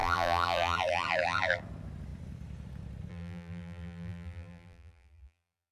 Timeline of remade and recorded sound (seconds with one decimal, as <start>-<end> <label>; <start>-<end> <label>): 0.0-1.6 remade; 1.6-3.1 recorded; 3.1-5.7 remade